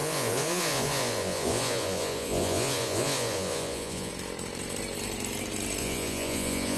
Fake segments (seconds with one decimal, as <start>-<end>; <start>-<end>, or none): 0.0-4.1; 5.8-6.8

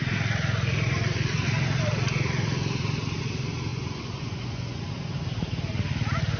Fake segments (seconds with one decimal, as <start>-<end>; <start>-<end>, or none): 3.7-4.8

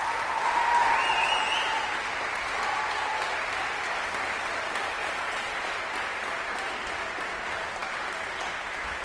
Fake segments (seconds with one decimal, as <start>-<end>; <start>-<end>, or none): 5.0-5.8

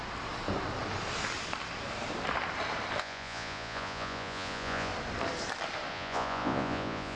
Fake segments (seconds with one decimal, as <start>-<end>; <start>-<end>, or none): 3.0-4.9; 5.9-7.2

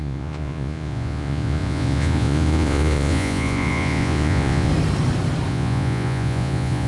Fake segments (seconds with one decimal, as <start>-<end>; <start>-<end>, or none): 0.0-4.7; 5.5-6.9